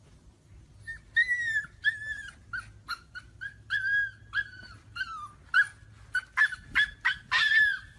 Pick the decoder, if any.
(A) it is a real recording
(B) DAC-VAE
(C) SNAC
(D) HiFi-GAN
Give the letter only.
A